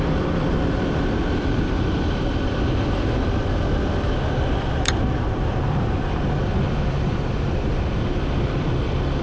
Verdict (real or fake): fake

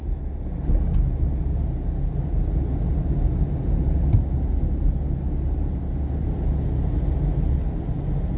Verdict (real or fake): real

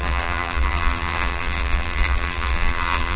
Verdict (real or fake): fake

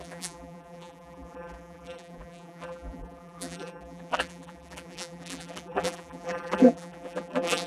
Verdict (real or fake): fake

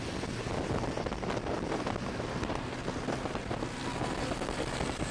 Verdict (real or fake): real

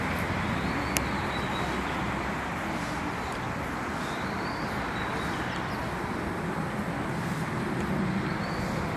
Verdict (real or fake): real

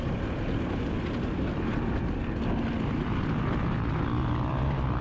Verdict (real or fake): real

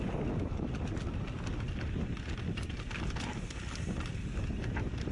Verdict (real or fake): real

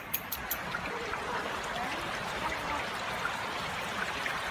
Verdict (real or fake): fake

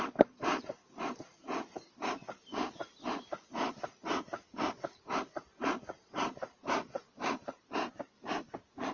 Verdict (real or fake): fake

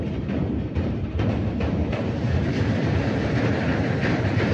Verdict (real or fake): fake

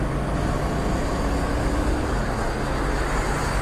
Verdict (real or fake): real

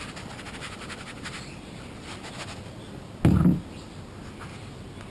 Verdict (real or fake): real